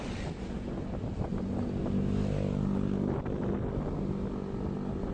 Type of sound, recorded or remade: recorded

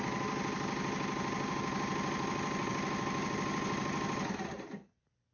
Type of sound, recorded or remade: recorded